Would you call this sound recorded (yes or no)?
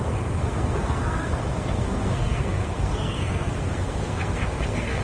no